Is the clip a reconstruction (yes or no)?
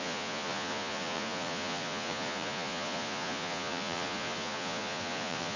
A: yes